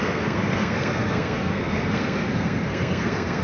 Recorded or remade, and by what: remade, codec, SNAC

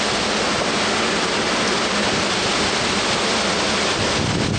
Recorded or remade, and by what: recorded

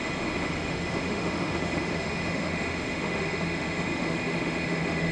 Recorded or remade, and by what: remade, autoencoder, DAC-VAE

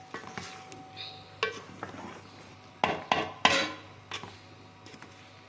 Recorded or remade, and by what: recorded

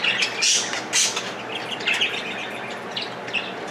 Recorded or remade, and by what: recorded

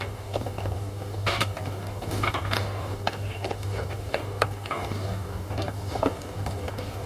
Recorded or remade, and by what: remade, codec, DAC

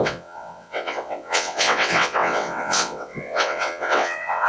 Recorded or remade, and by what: remade, vocoder, WaveNeXt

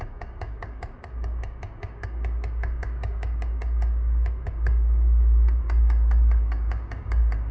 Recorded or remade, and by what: remade, codec, DAC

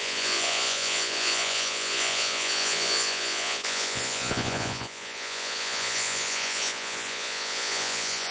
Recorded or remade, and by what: remade, vocoder, Vocos